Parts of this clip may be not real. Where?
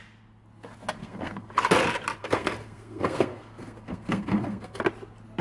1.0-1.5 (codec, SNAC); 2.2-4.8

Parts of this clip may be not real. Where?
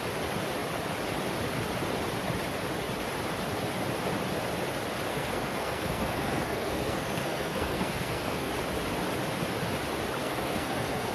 5.1-8.5 (codec, SNAC); 10.2-11.1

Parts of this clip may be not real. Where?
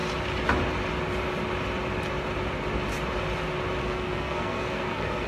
3.8-5.3 (codec, SNAC)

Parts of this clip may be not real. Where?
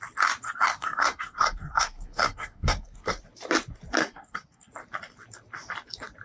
0.4-3.2 (codec, SNAC); 4.0-4.7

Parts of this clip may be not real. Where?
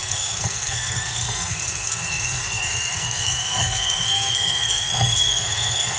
0.0-6.0 (codec, SNAC)